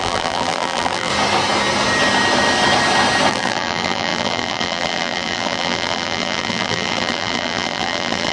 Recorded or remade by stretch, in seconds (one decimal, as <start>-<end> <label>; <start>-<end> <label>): 0.0-1.1 remade; 1.1-3.3 recorded; 3.3-8.3 remade